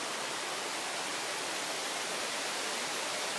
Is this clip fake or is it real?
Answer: fake